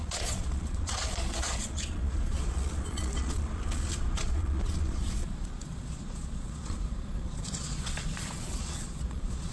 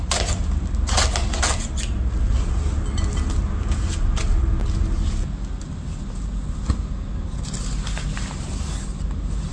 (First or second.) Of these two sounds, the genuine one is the second